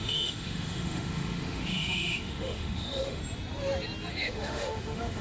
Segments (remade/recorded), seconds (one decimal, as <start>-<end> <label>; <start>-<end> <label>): 0.0-3.2 remade; 3.2-4.1 recorded; 4.1-5.2 remade